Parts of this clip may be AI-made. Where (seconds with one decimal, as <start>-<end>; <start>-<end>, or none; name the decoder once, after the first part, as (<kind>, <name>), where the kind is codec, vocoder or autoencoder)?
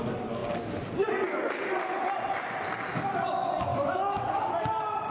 3.7-4.4 (autoencoder, DAC-VAE)